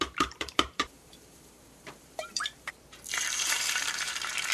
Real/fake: fake